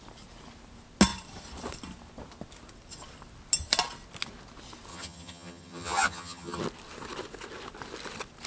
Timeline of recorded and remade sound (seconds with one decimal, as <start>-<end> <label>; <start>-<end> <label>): 0.0-4.9 recorded; 4.9-6.6 remade; 6.6-8.5 recorded